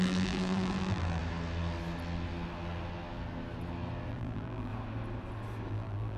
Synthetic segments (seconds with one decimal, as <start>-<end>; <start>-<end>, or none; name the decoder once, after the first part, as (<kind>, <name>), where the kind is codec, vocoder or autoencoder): 0.0-1.2 (vocoder, BigVGAN v2); 4.1-4.7; 5.7-6.2